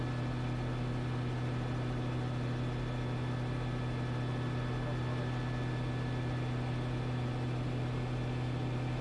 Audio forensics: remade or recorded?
recorded